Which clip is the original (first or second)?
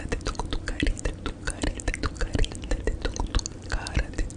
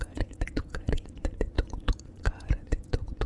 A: first